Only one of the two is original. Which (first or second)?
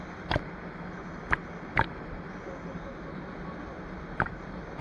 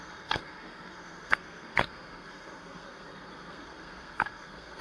first